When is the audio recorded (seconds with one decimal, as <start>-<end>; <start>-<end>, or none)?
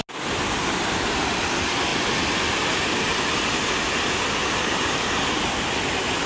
0.0-4.4; 5.3-6.3